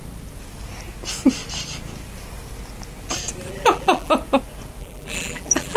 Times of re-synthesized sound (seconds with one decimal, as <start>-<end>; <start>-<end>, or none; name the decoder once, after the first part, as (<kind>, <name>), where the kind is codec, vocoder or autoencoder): 3.5-4.1 (vocoder, BigVGAN v2); 4.8-5.8